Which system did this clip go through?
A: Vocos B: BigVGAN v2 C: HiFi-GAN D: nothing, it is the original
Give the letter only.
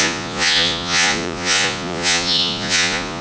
A